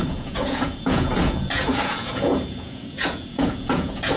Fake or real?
fake